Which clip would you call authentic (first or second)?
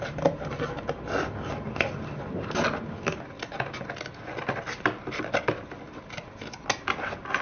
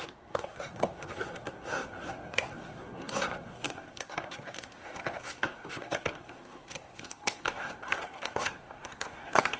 first